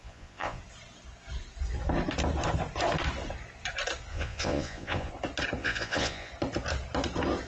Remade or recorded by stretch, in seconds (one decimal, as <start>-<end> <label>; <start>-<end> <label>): 0.0-0.6 remade; 0.6-4.1 recorded; 4.1-5.1 remade; 5.1-5.6 recorded; 5.6-6.3 remade; 6.3-7.5 recorded